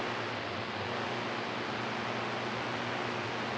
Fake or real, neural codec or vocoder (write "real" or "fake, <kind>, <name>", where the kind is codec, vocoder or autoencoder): real